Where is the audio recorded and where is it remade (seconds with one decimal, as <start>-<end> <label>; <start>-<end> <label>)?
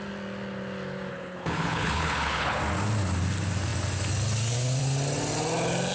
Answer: 0.0-1.1 recorded; 1.1-2.6 remade; 2.6-5.9 recorded